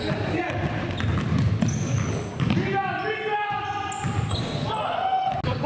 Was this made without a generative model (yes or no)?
yes